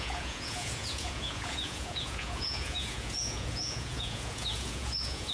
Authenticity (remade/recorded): remade